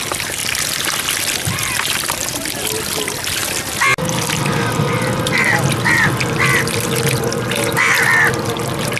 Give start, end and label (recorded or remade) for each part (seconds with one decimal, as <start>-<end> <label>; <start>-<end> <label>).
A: 0.0-3.4 remade; 3.4-7.0 recorded; 7.0-9.0 remade